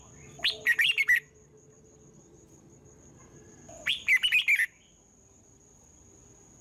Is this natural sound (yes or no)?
yes